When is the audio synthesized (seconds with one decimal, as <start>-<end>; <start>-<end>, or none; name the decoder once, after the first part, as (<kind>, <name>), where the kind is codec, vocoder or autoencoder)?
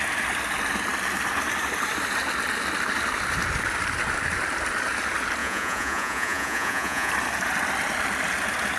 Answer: 5.4-7.1 (vocoder, Vocos)